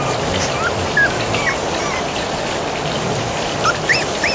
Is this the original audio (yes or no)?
yes